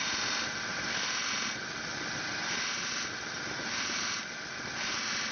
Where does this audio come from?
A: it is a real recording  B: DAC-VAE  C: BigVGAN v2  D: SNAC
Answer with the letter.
A